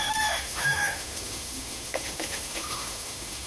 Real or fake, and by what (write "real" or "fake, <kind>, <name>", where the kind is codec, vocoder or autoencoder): fake, autoencoder, DAC-VAE